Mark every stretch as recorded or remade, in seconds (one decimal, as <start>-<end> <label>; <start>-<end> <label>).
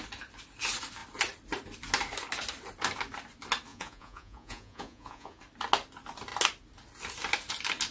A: 0.0-3.7 recorded; 3.7-5.4 remade; 5.4-7.9 recorded